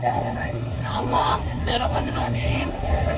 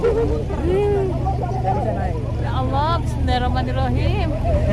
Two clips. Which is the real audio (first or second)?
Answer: second